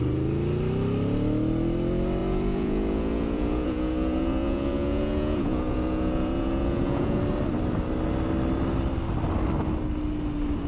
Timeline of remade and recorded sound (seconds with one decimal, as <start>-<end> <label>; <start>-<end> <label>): 0.0-2.2 recorded; 2.2-7.2 remade; 7.2-10.7 recorded